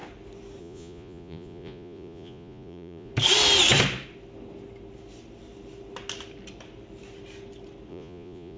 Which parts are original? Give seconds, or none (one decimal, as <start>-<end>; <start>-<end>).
0.0-0.6; 3.1-7.9